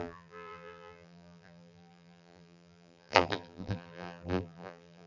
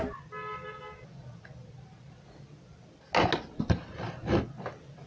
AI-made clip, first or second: first